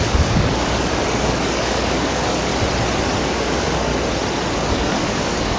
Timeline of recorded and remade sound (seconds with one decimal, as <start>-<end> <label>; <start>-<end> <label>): 0.0-2.5 remade; 2.5-3.2 recorded; 3.2-3.9 remade; 3.9-4.5 recorded; 4.5-5.6 remade